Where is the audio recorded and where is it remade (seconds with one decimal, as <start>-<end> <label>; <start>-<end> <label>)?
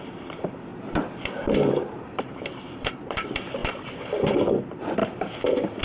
0.0-5.0 remade; 5.0-5.8 recorded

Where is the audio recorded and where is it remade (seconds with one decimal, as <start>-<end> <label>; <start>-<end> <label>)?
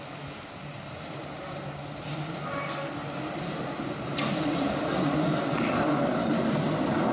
0.0-7.1 recorded